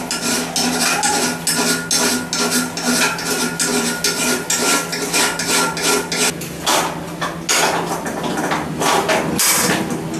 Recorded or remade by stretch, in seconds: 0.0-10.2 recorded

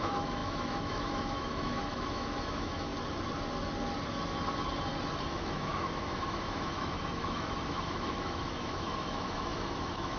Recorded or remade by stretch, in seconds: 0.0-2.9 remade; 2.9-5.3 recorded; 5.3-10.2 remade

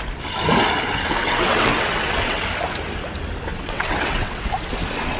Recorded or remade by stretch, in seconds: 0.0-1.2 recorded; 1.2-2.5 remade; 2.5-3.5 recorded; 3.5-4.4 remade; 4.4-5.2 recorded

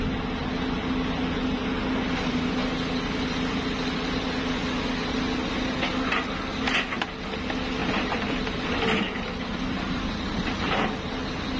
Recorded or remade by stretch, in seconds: 0.0-7.8 recorded; 7.8-10.1 remade; 10.1-11.6 recorded

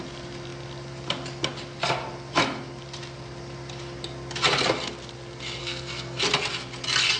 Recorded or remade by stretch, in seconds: 0.0-5.6 recorded; 5.6-6.2 remade; 6.2-7.2 recorded

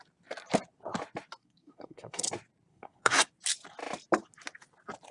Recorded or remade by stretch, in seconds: 0.0-1.4 recorded; 1.4-2.3 remade; 2.3-2.7 recorded; 2.7-3.3 remade; 3.3-5.1 recorded

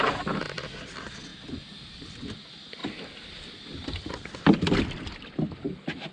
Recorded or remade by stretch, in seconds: 0.0-6.1 recorded

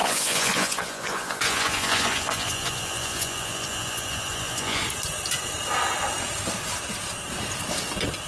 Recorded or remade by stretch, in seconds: 0.0-4.8 remade; 4.8-8.3 recorded